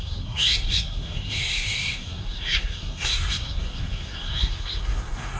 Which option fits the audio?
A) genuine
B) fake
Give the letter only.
B